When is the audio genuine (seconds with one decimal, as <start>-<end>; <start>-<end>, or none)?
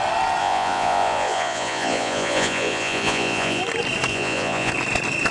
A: 0.0-0.4; 3.6-4.1; 4.7-5.3